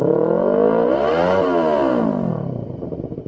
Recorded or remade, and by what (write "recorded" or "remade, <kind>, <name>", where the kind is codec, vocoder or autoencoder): recorded